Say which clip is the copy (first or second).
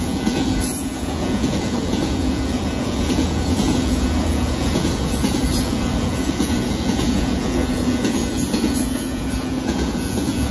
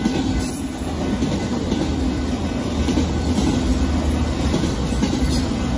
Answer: first